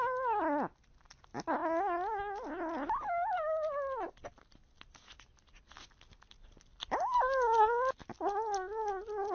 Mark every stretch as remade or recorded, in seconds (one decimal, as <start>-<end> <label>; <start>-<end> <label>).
0.0-9.3 recorded